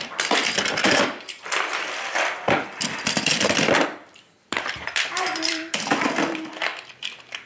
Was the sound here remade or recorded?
remade